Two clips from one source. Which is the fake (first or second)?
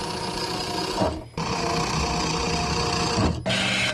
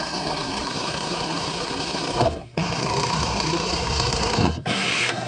second